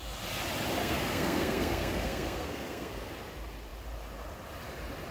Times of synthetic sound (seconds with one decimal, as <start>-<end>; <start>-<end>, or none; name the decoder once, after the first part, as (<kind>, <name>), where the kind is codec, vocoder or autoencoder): 0.8-3.1 (codec, SNAC)